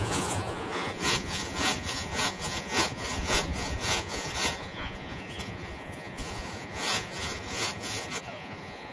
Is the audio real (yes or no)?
no